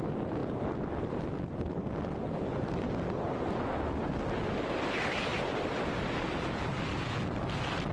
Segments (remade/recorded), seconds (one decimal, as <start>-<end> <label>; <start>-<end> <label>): 0.0-0.4 recorded; 0.4-1.0 remade; 1.0-5.3 recorded; 5.3-5.8 remade; 5.8-7.9 recorded

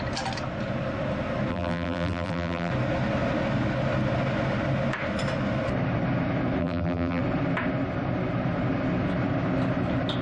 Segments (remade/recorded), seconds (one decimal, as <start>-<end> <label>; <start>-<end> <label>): 0.0-1.5 recorded; 1.5-2.7 remade; 2.7-6.6 recorded; 6.6-7.2 remade; 7.2-10.2 recorded